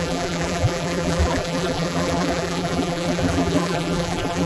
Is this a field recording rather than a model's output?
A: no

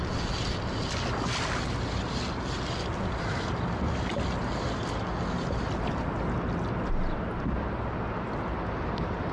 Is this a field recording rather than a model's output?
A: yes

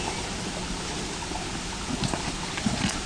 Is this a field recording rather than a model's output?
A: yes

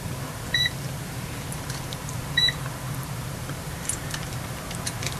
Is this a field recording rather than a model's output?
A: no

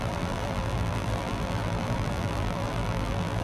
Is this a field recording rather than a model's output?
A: no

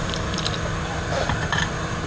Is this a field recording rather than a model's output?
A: no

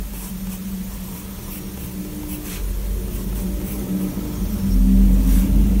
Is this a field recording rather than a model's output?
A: yes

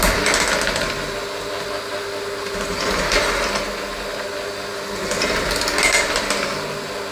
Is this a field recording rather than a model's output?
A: yes